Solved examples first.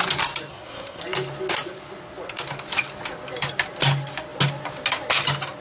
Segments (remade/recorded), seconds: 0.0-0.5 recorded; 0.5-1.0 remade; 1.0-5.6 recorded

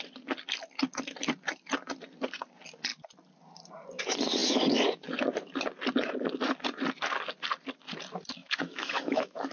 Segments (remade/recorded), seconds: 0.0-8.4 recorded; 8.4-9.5 remade

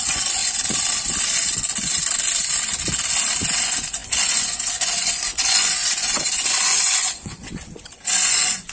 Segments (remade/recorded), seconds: 0.0-0.4 remade; 0.4-3.6 recorded; 3.6-8.7 remade

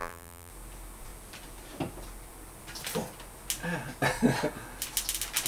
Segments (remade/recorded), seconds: 0.0-0.5 remade; 0.5-5.5 recorded

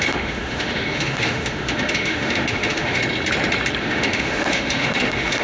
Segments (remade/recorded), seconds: 0.0-3.0 remade; 3.0-3.8 recorded; 3.8-5.4 remade